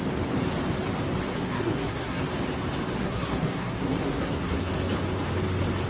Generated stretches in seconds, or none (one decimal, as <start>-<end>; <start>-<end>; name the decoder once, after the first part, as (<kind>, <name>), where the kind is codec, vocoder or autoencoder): 1.3-2.2 (codec, SNAC); 3.0-4.7